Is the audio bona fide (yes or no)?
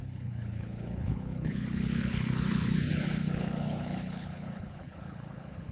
no